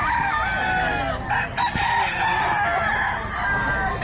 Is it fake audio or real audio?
real